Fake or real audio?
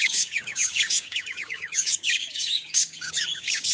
fake